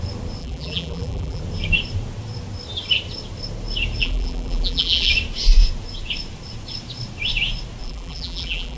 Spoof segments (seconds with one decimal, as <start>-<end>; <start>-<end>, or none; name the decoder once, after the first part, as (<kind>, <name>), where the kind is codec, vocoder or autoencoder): 0.4-1.4 (vocoder, BigVGAN v2); 4.0-5.1; 7.8-8.8